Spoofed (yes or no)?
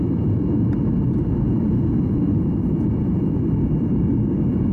yes